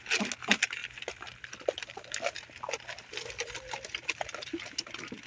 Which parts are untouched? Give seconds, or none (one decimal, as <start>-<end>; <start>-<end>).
0.0-5.3